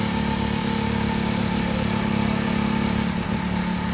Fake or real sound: real